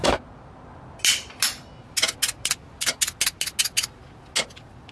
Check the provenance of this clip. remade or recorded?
recorded